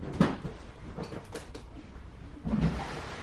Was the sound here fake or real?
fake